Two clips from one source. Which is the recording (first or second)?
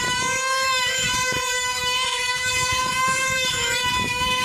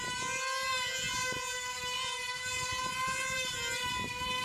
second